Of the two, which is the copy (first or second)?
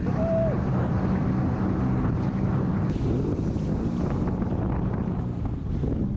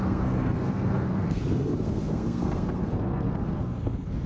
second